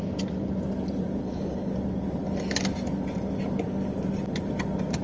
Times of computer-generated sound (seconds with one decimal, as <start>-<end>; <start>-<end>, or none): 1.2-1.7